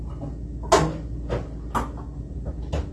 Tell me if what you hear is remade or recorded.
recorded